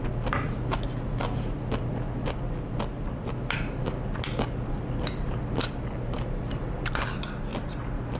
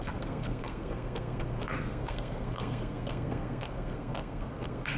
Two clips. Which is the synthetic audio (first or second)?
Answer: second